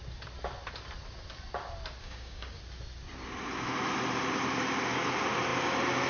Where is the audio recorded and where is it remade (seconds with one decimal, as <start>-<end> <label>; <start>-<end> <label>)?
0.0-2.0 recorded; 2.0-2.6 remade; 2.6-6.1 recorded